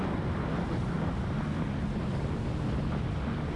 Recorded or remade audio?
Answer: recorded